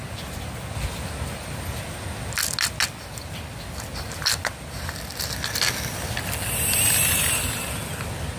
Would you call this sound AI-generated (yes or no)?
no